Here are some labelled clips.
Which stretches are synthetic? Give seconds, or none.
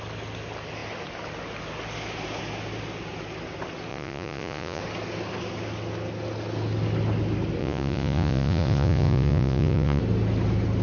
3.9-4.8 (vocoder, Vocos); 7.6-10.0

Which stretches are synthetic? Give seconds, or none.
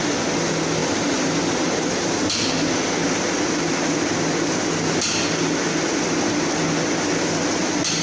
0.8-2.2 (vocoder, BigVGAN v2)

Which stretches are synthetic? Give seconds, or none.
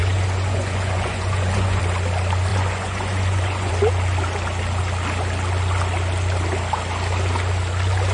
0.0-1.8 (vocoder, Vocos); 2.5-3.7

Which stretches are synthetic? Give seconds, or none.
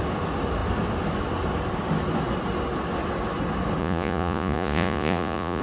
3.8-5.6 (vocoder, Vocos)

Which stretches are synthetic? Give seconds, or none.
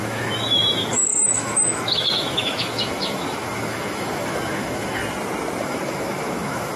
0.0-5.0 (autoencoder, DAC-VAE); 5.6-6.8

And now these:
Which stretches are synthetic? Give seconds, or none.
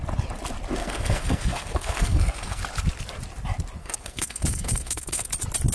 0.8-2.6 (codec, SNAC); 3.8-5.3